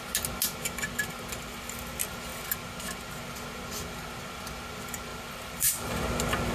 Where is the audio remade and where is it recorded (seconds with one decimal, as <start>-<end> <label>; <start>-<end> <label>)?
0.0-5.1 recorded; 5.1-6.0 remade; 6.0-6.5 recorded